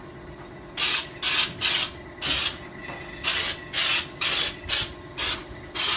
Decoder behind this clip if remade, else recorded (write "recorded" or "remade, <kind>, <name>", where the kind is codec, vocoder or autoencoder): recorded